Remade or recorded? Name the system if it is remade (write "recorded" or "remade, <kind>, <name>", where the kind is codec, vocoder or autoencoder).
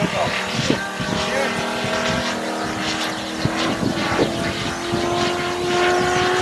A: recorded